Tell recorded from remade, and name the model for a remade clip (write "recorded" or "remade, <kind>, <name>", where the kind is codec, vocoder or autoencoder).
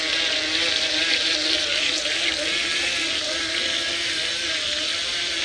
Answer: recorded